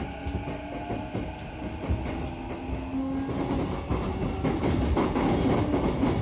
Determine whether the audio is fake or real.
real